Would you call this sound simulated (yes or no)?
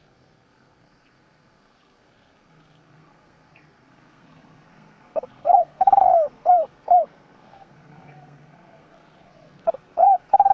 yes